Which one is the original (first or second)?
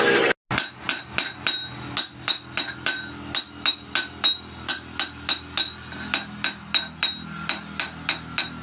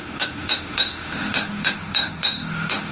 first